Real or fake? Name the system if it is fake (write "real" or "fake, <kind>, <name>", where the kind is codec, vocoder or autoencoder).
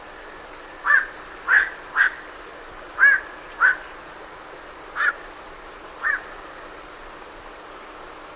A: real